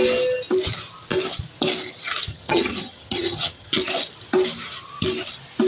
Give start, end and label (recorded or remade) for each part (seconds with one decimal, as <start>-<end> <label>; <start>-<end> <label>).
0.0-2.3 recorded; 2.3-3.7 remade; 3.7-5.7 recorded